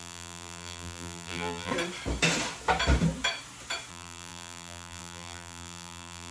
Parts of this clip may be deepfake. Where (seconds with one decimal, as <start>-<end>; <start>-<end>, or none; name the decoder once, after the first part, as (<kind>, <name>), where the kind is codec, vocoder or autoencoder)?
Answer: 0.0-1.7 (vocoder, BigVGAN v2); 3.9-6.3